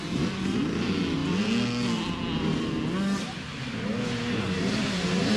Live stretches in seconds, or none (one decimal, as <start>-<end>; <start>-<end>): 0.0-5.4